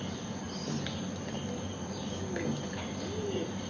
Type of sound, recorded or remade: recorded